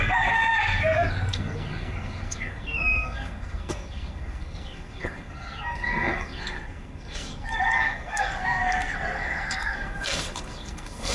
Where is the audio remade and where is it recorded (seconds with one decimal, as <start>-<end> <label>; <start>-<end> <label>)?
0.0-11.1 remade